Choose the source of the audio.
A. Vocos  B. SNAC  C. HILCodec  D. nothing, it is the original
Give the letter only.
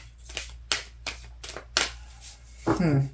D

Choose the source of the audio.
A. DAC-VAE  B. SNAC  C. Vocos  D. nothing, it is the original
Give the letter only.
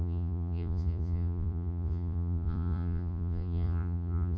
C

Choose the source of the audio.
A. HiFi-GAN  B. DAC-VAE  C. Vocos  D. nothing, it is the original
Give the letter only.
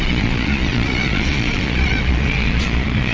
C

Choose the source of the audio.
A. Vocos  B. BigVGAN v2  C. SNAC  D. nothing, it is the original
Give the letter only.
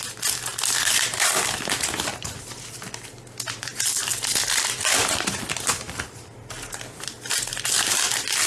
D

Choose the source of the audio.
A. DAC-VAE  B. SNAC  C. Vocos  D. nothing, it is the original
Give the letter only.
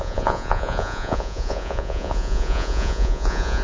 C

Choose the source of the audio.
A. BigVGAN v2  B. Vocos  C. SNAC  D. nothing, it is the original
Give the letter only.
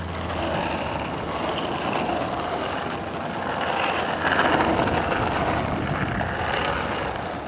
D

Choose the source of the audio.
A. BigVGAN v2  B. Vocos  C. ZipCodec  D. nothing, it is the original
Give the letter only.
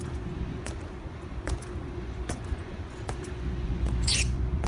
B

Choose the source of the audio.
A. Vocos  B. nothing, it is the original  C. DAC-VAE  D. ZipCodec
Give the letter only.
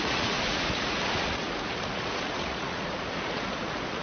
A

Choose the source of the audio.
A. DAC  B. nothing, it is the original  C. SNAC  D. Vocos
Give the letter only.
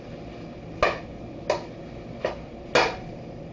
B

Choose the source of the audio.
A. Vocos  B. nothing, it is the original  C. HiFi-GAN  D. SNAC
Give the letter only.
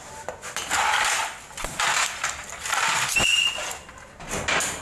B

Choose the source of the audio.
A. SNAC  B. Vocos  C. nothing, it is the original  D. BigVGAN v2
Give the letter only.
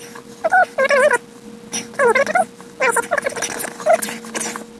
C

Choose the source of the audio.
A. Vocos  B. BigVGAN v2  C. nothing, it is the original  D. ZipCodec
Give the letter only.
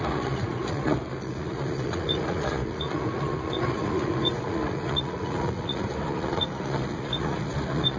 A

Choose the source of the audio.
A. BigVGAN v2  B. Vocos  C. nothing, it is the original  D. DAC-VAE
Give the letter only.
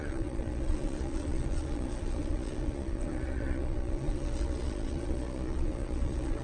B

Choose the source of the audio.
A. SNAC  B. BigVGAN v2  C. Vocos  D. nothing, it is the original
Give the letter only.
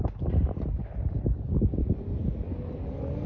D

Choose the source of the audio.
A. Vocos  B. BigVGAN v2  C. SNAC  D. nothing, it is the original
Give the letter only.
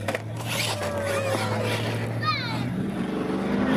D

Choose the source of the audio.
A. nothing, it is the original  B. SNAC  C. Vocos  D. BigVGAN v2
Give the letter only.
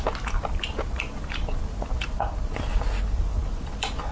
A